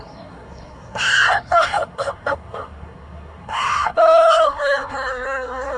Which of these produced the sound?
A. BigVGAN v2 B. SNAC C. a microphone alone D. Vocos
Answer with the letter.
B